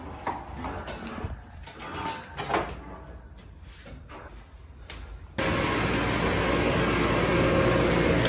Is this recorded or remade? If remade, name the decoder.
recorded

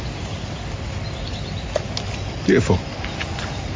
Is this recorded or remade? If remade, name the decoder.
recorded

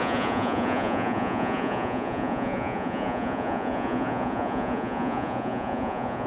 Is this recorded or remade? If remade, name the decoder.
remade, vocoder, Vocos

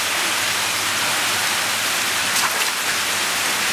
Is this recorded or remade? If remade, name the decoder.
recorded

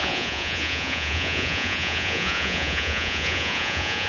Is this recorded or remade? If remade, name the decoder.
remade, vocoder, Vocos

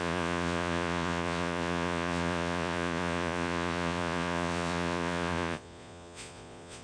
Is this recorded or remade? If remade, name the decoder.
remade, vocoder, Vocos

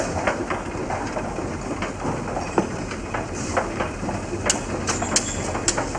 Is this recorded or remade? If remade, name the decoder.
recorded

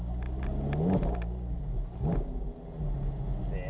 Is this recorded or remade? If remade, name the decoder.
recorded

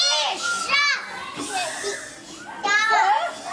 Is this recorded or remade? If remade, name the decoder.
recorded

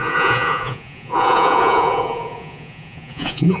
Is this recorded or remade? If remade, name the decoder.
remade, vocoder, Vocos